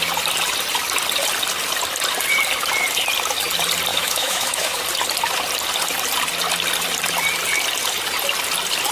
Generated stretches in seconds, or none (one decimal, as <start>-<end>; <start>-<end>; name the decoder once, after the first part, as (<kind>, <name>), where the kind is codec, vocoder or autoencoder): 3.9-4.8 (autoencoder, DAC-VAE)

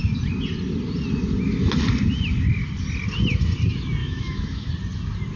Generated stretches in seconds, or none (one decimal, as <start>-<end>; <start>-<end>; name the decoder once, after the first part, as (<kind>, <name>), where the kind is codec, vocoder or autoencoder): 4.0-4.7 (autoencoder, DAC-VAE)

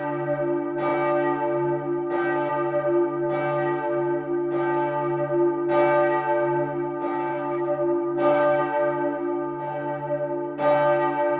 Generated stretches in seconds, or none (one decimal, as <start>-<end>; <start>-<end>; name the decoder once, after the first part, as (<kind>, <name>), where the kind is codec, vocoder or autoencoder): 7.3-8.6 (autoencoder, DAC-VAE)

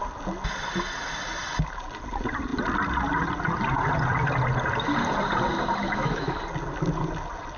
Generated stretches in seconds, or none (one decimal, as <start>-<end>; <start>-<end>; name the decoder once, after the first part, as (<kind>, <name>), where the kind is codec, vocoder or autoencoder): 5.8-6.4 (autoencoder, DAC-VAE)

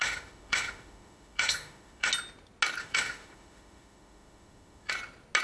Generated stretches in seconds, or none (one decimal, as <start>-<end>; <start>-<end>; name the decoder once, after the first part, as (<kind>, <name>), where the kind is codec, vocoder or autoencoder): 0.0-2.1 (autoencoder, DAC-VAE); 2.8-4.9

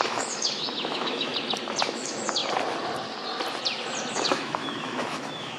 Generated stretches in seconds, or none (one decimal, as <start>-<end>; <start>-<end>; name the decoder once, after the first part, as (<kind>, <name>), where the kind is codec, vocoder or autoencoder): 0.0-1.3 (autoencoder, DAC-VAE); 1.8-2.4; 4.1-5.6

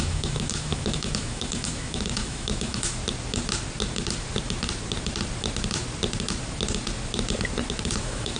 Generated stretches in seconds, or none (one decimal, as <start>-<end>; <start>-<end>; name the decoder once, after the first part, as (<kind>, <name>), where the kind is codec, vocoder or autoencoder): 0.0-3.0 (autoencoder, DAC-VAE); 8.0-8.4